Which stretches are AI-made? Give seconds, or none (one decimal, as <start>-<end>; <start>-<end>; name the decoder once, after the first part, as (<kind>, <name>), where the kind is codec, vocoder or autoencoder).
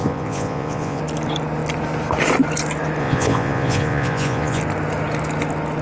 0.0-1.0 (vocoder, Vocos); 3.0-4.6